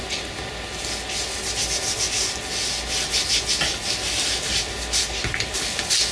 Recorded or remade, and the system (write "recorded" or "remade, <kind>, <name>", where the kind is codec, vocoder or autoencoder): recorded